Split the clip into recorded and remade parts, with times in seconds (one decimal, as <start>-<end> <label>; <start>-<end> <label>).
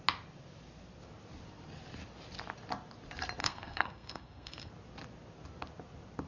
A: 0.0-3.4 recorded; 3.4-4.7 remade; 4.7-6.3 recorded